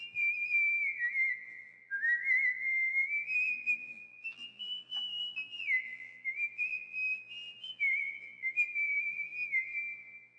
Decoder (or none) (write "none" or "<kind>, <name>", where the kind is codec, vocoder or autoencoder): vocoder, BigVGAN v2